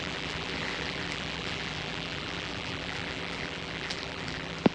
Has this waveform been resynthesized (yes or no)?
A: yes